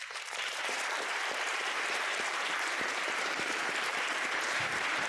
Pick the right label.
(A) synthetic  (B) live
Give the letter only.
A